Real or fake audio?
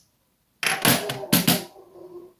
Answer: real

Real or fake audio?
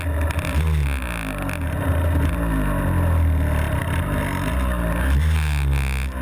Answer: real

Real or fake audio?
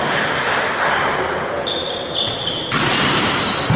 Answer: real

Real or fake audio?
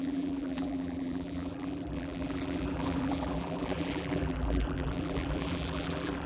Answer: fake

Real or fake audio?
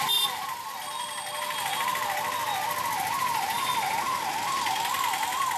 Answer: real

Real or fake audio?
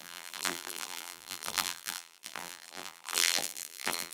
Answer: fake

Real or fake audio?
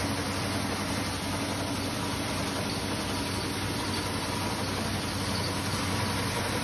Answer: real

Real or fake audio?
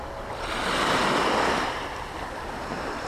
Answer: real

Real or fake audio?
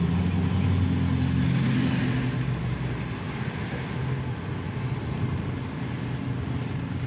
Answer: real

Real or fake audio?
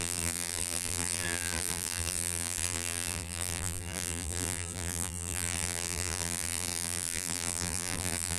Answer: fake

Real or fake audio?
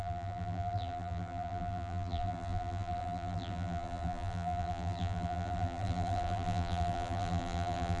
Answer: fake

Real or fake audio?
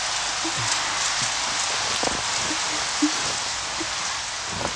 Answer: real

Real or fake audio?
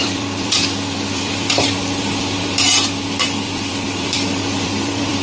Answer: fake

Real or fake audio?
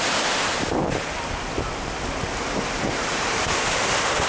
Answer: fake